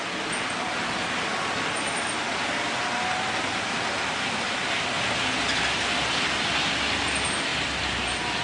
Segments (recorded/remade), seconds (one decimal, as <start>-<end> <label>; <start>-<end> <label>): 0.0-8.4 recorded